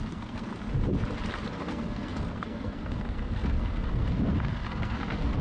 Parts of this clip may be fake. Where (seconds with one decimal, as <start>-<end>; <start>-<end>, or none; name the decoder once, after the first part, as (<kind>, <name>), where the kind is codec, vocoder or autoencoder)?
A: 0.0-0.5 (codec, SNAC); 1.5-5.4